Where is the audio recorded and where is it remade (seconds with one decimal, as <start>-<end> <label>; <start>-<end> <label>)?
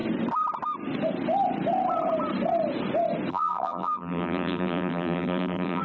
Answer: 0.0-3.3 recorded; 3.3-5.8 remade